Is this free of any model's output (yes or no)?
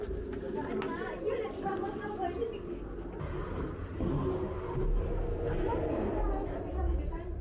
yes